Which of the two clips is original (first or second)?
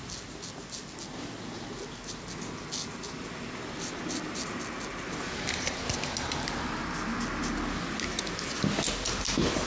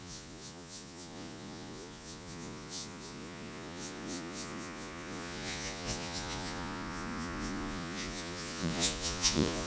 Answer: first